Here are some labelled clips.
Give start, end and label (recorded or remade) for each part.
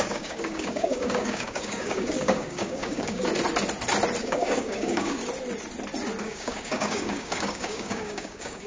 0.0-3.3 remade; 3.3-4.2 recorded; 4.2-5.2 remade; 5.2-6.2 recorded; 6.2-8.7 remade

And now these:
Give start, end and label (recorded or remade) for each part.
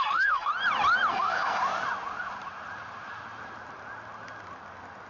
0.0-0.5 remade; 0.5-1.1 recorded; 1.1-1.6 remade; 1.6-5.1 recorded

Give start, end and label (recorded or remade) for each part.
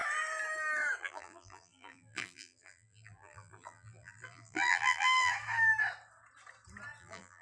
0.0-1.0 recorded; 1.0-5.3 remade; 5.3-7.0 recorded; 7.0-7.4 remade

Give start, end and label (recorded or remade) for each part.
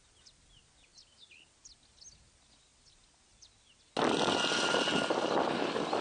0.0-6.0 recorded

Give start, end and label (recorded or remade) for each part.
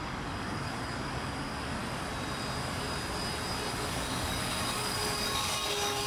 0.0-1.8 remade; 1.8-3.7 recorded; 3.7-6.1 remade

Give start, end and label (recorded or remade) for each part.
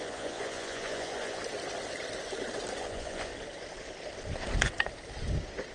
0.0-1.4 remade; 1.4-2.8 recorded; 2.8-3.3 remade; 3.3-5.7 recorded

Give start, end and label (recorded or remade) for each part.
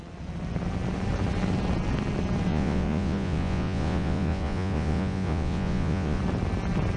0.0-2.5 recorded; 2.5-6.2 remade; 6.2-7.0 recorded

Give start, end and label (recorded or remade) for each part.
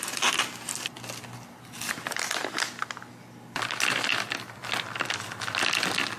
0.0-6.2 recorded